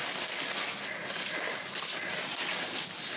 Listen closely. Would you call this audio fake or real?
real